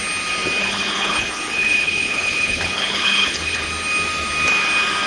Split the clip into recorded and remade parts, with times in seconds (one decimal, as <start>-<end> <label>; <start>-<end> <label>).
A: 0.0-0.6 recorded; 0.6-3.7 remade; 3.7-5.1 recorded